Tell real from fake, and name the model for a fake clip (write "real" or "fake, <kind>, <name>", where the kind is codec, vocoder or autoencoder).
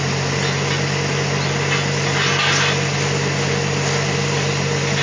real